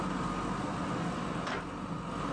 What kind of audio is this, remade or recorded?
recorded